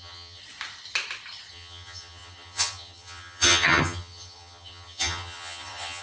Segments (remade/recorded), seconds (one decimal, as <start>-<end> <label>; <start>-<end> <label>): 0.0-0.4 remade; 0.4-1.5 recorded; 1.5-6.0 remade